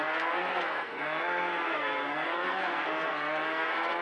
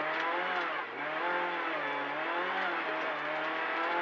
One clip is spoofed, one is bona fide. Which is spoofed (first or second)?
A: first